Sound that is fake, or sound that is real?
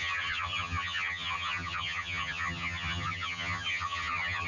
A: fake